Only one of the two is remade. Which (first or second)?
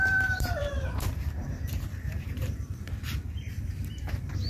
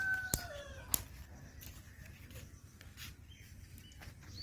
first